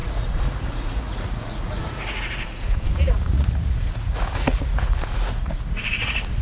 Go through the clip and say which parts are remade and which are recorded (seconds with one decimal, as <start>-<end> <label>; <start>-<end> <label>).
0.0-6.4 remade